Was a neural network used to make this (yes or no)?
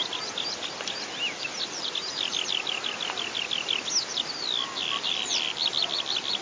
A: no